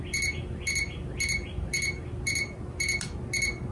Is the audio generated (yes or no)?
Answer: no